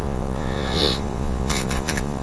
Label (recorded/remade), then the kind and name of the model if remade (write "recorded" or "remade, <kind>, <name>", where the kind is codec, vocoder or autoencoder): remade, vocoder, Vocos